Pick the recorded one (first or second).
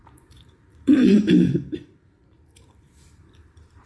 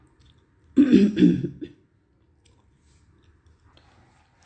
second